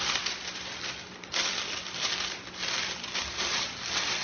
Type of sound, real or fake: real